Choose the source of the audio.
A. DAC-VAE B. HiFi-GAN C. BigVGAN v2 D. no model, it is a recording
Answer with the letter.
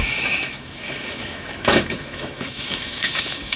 A